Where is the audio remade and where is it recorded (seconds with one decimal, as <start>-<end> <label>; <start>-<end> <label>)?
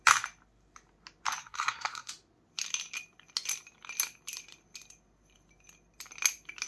0.0-1.4 recorded; 1.4-2.1 remade; 2.1-6.7 recorded